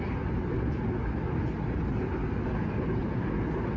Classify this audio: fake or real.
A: real